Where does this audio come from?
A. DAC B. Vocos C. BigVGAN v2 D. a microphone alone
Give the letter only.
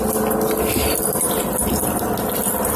D